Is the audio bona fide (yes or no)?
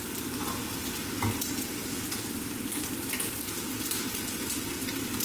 yes